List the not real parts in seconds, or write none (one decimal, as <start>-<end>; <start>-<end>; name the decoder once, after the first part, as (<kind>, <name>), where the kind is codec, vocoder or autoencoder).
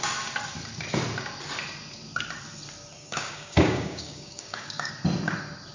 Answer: 3.0-4.9 (codec, DAC)